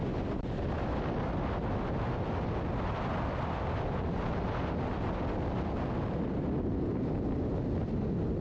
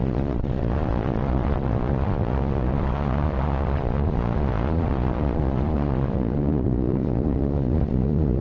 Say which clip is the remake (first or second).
second